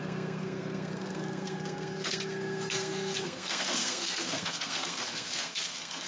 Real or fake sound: fake